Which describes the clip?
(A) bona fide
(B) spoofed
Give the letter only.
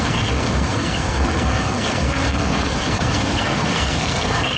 B